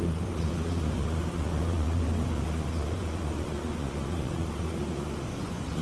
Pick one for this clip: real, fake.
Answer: fake